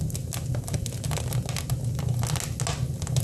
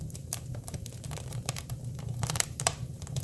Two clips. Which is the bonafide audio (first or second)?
first